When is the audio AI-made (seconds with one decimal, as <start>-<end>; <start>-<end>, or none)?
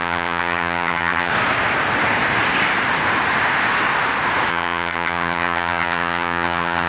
0.0-1.3; 4.5-6.9